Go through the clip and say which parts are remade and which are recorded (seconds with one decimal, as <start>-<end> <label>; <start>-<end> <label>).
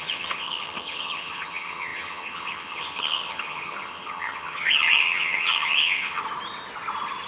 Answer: 0.0-6.2 remade; 6.2-7.3 recorded